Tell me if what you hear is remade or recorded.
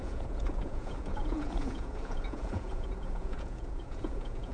remade